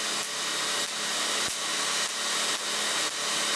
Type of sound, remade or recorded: recorded